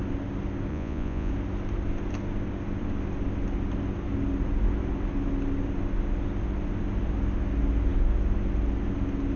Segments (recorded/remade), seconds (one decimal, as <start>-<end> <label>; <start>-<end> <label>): 0.0-0.7 recorded; 0.7-1.3 remade; 1.3-9.4 recorded